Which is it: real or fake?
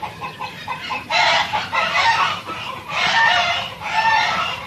fake